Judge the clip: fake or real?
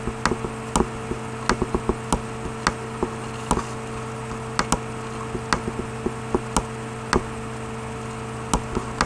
real